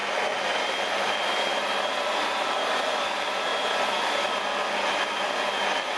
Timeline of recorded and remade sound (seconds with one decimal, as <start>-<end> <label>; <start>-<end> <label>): 0.0-1.0 recorded; 1.0-1.5 remade; 1.5-2.3 recorded; 2.3-3.5 remade; 3.5-6.0 recorded